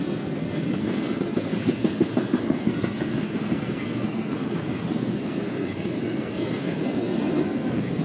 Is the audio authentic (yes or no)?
no